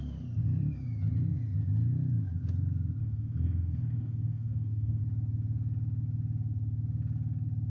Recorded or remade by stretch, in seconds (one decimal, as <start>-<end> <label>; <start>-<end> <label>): 0.0-3.0 recorded; 3.0-5.0 remade; 5.0-7.7 recorded